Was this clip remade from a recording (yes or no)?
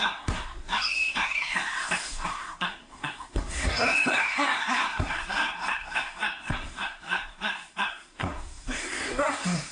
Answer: yes